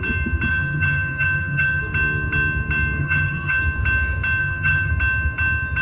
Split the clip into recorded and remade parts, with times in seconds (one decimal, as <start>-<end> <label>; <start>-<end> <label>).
0.0-0.5 recorded; 0.5-1.8 remade; 1.8-3.0 recorded; 3.0-3.6 remade; 3.6-4.4 recorded; 4.4-4.9 remade; 4.9-5.8 recorded